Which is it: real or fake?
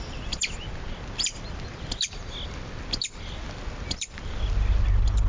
real